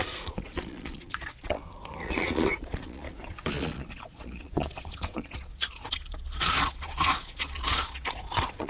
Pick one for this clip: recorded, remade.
remade